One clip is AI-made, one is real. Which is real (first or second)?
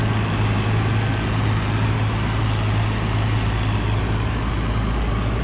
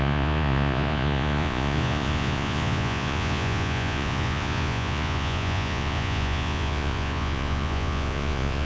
first